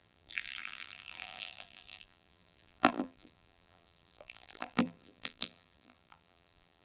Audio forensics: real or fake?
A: fake